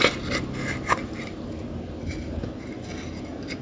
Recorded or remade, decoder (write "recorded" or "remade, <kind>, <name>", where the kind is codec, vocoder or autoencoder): recorded